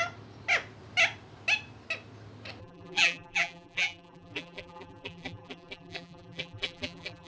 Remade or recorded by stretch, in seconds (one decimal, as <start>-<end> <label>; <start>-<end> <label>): 0.0-2.6 recorded; 2.6-7.3 remade